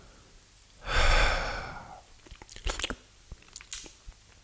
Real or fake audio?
real